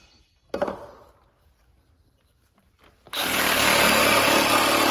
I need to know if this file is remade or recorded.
recorded